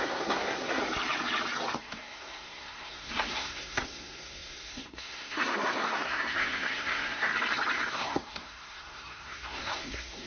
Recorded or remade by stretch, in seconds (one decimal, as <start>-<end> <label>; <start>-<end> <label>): 0.0-0.8 remade; 0.8-1.8 recorded; 1.8-7.3 remade; 7.3-7.9 recorded; 7.9-10.3 remade